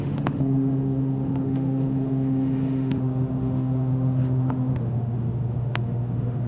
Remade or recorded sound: remade